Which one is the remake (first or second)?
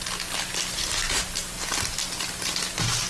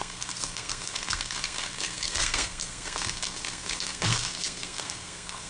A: second